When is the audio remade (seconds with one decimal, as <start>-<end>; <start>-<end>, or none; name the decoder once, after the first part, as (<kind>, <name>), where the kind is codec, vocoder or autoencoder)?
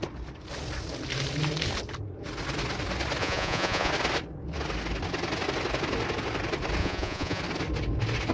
3.2-3.9 (vocoder, Vocos); 6.8-7.4